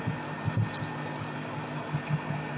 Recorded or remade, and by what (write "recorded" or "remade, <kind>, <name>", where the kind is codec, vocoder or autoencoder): recorded